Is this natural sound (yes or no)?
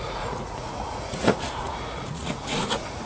no